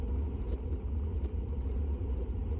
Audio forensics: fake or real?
fake